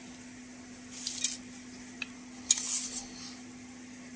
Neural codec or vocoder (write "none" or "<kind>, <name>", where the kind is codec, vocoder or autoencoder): none